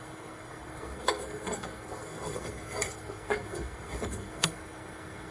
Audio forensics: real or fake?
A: fake